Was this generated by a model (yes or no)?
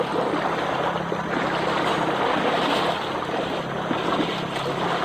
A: no